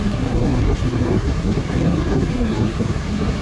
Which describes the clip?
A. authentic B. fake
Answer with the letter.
B